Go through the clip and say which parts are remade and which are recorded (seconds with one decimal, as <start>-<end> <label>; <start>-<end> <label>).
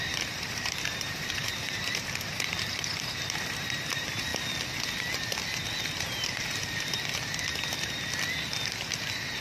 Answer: 0.0-4.3 remade; 4.3-5.8 recorded; 5.8-7.5 remade; 7.5-9.4 recorded